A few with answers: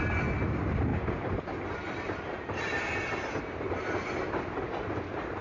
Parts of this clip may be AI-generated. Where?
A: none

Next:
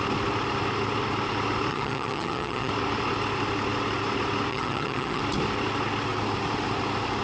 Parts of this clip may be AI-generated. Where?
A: 1.7-2.7 (vocoder, HiFi-GAN); 4.5-5.2

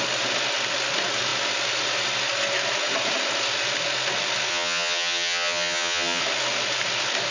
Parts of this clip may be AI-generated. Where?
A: 4.5-6.2 (vocoder, HiFi-GAN)

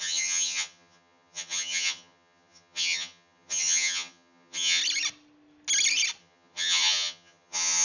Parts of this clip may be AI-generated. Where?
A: 0.0-4.8 (vocoder, HiFi-GAN); 6.2-7.8

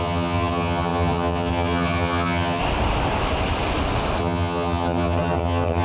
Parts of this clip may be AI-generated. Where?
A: 0.0-2.6 (vocoder, HiFi-GAN); 4.2-5.8

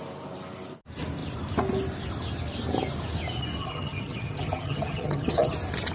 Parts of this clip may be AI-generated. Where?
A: 3.6-5.5 (vocoder, HiFi-GAN)

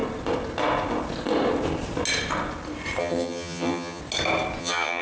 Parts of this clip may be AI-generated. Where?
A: 3.0-4.0 (vocoder, HiFi-GAN); 4.6-5.0